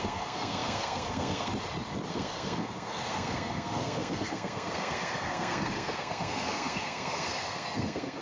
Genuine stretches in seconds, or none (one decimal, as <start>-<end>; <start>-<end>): 1.5-2.1